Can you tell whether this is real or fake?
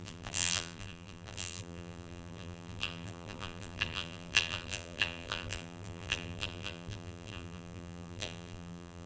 fake